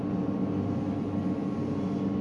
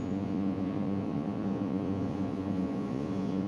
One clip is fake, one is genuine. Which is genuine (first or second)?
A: first